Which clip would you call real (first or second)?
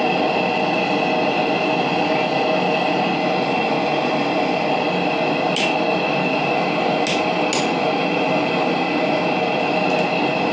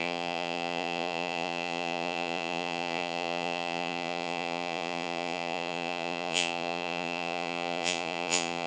first